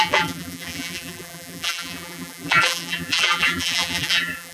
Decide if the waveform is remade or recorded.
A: remade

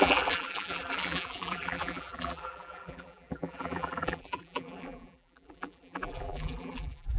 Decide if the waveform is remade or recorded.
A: remade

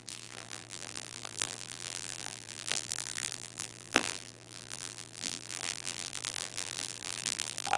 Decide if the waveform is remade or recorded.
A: remade